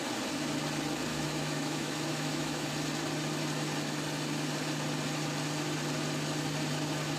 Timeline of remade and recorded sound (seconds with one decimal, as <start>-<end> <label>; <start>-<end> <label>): 0.0-1.1 recorded; 1.1-2.7 remade; 2.7-7.2 recorded